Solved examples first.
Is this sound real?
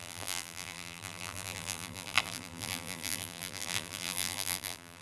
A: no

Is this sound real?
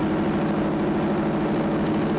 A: yes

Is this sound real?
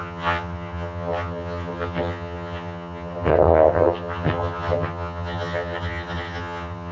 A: no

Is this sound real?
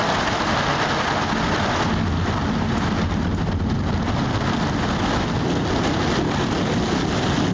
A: yes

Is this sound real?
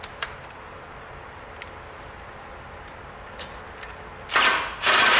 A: yes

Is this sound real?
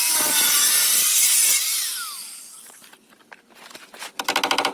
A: yes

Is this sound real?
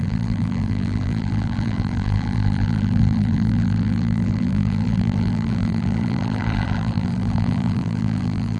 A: no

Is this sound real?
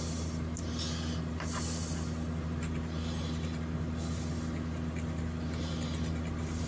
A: yes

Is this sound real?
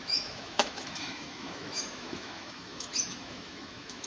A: no